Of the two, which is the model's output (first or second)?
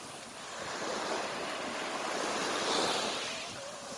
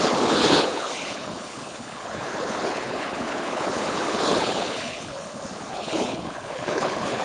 second